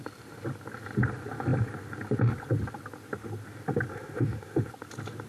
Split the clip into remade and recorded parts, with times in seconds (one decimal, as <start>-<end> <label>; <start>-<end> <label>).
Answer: 0.0-3.9 recorded; 3.9-4.7 remade; 4.7-5.3 recorded